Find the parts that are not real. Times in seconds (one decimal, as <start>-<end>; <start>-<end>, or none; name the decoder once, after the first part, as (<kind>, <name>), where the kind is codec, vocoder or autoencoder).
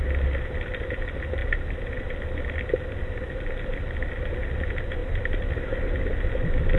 none